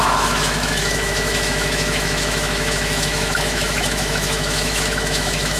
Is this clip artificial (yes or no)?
yes